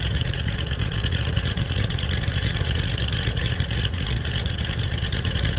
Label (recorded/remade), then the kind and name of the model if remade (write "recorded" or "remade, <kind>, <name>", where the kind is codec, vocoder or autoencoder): remade, vocoder, Vocos